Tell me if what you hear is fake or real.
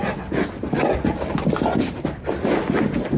real